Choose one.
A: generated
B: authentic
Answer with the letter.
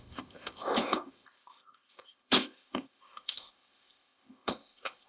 A